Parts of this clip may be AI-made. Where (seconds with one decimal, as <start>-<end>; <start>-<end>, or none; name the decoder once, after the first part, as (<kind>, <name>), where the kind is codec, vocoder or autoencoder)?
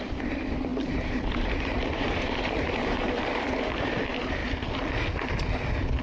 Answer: 0.7-3.2 (vocoder, BigVGAN v2)